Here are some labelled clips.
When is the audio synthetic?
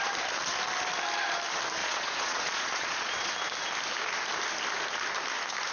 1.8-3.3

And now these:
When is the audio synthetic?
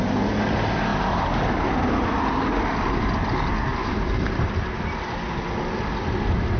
none